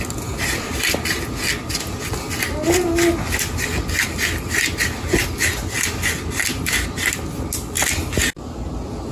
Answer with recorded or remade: recorded